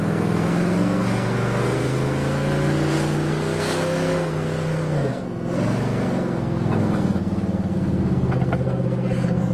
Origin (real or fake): fake